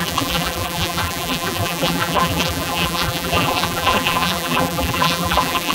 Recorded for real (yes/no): no